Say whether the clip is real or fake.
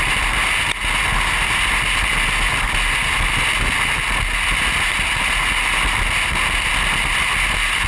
real